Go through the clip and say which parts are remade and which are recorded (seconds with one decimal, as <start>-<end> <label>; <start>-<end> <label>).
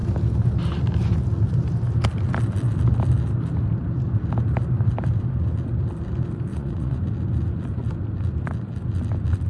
0.0-6.5 recorded; 6.5-7.0 remade; 7.0-9.5 recorded